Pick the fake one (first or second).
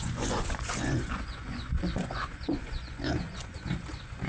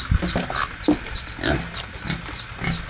first